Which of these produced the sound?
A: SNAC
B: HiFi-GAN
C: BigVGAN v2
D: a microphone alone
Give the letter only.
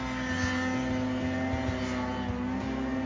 D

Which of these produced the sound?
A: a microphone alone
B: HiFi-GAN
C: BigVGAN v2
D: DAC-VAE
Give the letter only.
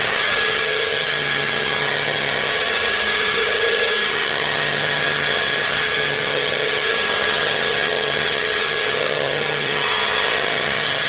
B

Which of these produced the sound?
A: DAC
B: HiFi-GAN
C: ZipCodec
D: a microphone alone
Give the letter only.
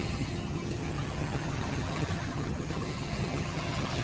B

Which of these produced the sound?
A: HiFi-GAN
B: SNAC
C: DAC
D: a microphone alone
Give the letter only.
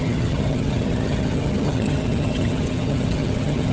A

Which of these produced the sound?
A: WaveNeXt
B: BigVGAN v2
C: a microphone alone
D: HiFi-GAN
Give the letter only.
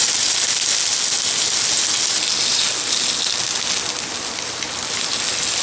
C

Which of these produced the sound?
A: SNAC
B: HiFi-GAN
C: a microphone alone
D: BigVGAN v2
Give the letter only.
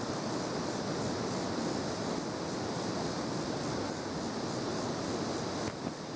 C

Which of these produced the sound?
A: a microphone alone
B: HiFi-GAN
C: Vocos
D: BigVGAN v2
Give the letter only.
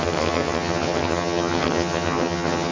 B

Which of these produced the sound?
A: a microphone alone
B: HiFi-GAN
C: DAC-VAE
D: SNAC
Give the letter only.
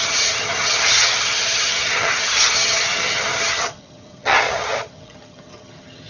B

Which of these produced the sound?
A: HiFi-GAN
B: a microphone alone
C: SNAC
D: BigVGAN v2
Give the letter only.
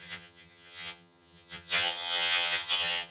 A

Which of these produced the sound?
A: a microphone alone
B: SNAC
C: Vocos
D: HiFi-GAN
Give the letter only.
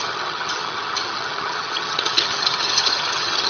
D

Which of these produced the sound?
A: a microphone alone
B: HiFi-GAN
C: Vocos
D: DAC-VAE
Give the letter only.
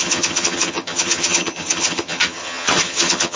B